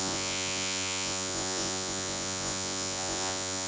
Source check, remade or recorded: remade